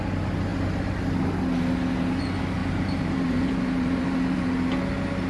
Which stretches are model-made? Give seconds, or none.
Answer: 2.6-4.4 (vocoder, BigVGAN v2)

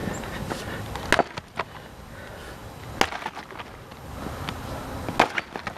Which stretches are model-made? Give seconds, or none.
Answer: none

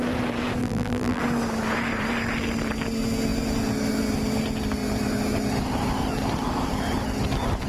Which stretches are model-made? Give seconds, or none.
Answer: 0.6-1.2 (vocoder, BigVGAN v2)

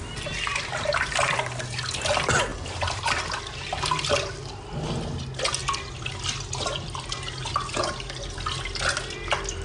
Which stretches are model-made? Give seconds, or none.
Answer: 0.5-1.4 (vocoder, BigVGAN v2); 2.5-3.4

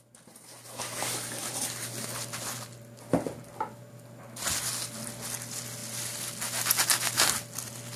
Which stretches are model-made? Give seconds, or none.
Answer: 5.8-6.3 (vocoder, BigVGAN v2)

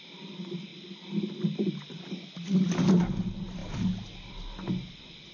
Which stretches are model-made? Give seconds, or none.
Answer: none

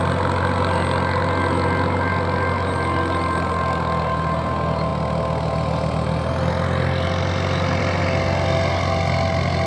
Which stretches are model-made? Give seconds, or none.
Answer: none